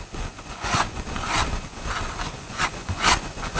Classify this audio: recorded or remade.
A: remade